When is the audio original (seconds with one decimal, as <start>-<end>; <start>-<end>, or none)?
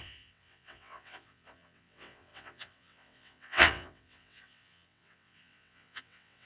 none